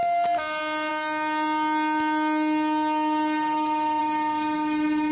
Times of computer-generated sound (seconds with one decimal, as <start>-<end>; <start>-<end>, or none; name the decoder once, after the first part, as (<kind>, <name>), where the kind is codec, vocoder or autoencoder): none